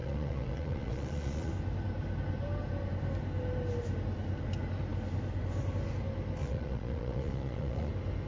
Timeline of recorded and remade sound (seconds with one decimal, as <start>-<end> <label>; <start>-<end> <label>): 0.0-1.5 remade; 1.5-6.4 recorded; 6.4-7.9 remade; 7.9-8.3 recorded